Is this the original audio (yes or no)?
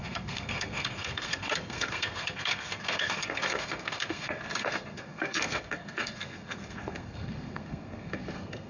no